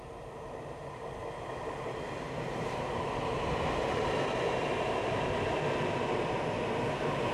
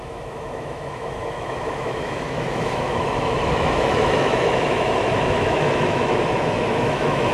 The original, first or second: first